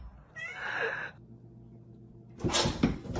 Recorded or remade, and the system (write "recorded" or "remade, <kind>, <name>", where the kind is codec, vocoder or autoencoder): recorded